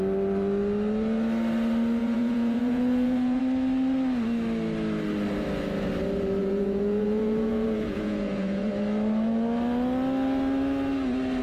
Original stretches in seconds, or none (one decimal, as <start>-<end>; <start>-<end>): 0.0-2.0; 3.4-6.4; 8.7-11.4